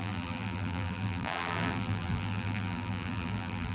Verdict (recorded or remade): remade